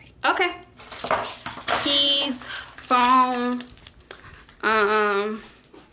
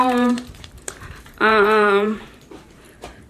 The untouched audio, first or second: first